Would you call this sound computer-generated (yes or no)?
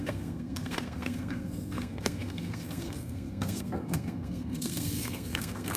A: yes